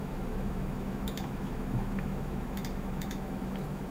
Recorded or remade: remade